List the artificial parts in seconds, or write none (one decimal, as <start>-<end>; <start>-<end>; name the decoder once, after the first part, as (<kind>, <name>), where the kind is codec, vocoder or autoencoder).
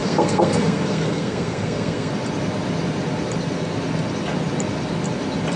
0.0-2.1 (codec, SNAC)